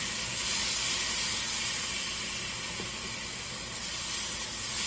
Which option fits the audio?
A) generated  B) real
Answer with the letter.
B